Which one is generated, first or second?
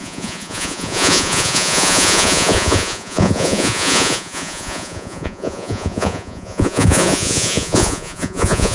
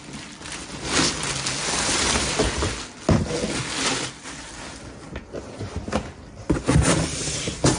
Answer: first